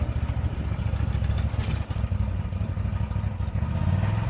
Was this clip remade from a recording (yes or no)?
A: no